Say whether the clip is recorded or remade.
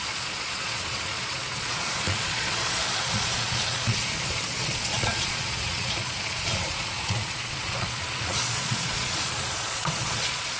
remade